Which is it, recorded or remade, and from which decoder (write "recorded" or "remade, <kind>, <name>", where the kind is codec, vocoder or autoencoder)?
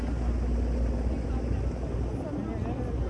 recorded